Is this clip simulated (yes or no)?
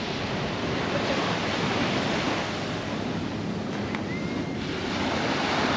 no